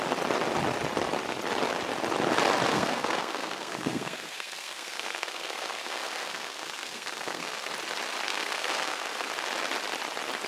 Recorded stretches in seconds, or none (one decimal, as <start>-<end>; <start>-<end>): 0.0-2.7; 7.7-8.3; 9.3-10.5